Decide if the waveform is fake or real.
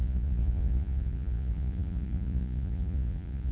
fake